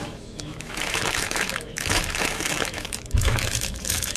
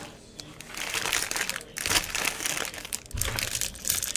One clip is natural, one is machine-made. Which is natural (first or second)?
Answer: second